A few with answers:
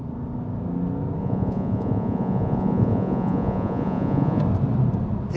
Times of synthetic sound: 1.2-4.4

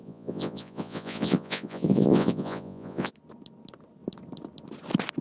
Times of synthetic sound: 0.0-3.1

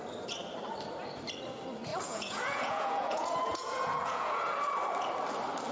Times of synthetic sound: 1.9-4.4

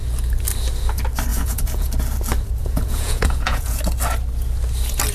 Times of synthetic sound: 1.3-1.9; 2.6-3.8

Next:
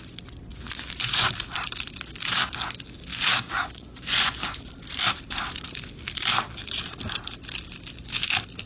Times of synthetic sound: 0.5-1.3; 3.1-4.7

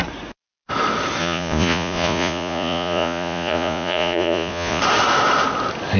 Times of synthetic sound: 1.2-4.8

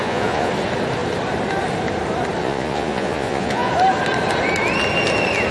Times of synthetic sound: 0.0-0.5; 2.4-3.7

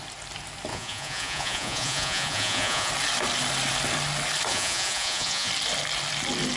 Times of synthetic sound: 0.7-2.9; 4.5-5.5